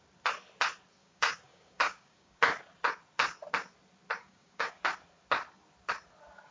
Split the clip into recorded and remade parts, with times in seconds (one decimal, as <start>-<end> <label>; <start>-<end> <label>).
0.0-1.0 recorded; 1.0-2.4 remade; 2.4-4.2 recorded; 4.2-4.8 remade; 4.8-6.5 recorded